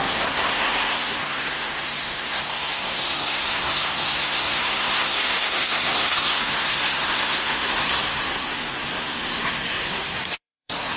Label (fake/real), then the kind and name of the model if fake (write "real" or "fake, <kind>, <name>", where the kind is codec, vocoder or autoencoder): fake, codec, SNAC